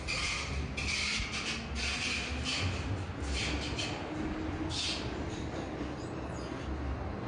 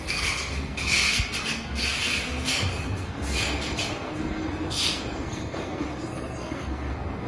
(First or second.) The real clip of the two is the first